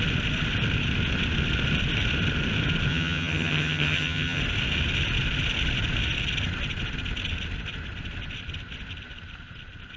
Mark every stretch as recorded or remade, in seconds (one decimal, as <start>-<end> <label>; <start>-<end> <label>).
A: 0.0-2.9 recorded; 2.9-4.4 remade; 4.4-10.0 recorded